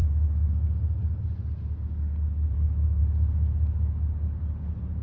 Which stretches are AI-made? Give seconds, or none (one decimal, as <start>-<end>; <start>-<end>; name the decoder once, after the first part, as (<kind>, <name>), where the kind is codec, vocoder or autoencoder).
none